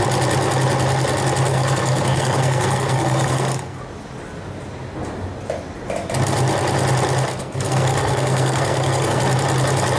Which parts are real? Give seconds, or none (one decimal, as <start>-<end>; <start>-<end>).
0.0-1.5; 3.8-7.4; 9.2-10.0